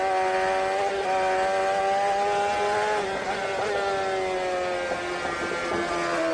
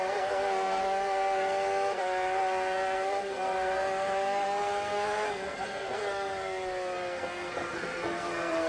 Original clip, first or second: first